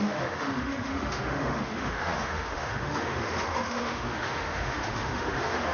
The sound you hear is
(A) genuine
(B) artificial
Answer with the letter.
B